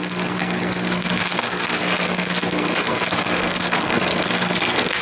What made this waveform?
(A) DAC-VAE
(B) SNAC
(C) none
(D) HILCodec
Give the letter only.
B